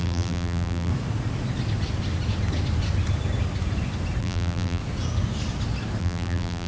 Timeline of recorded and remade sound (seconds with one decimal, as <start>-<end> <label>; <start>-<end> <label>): 0.0-0.9 remade; 0.9-4.2 recorded; 4.2-4.8 remade; 4.8-6.0 recorded; 6.0-6.7 remade